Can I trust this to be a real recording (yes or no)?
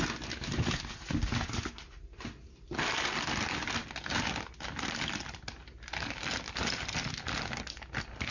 yes